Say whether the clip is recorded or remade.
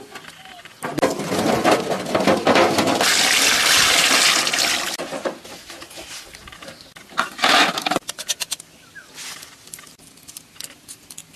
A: recorded